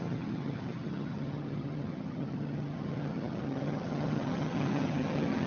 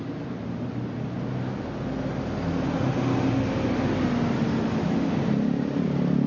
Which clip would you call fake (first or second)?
first